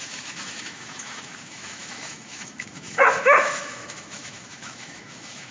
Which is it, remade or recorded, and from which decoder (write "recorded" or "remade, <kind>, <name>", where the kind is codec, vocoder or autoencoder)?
remade, autoencoder, DAC-VAE